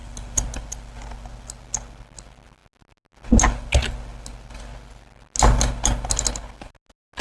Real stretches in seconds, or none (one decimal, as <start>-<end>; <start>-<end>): 0.0-7.2